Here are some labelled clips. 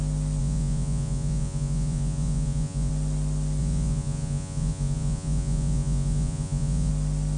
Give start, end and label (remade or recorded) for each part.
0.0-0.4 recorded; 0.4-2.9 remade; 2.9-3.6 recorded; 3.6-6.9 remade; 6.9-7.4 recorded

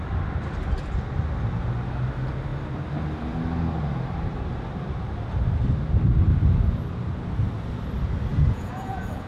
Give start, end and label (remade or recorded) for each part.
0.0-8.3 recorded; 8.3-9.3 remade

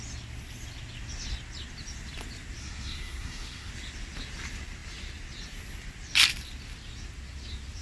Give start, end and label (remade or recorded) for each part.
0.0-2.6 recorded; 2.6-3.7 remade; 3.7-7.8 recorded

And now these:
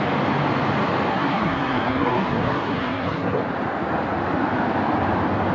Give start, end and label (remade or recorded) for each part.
0.0-1.1 recorded; 1.1-3.4 remade; 3.4-5.5 recorded

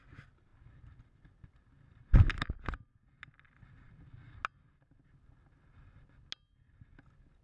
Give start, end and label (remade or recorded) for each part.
0.0-7.4 recorded

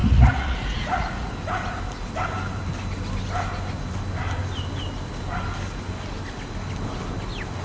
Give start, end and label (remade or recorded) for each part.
0.0-1.3 remade; 1.3-7.6 recorded